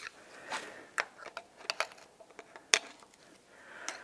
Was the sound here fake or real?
real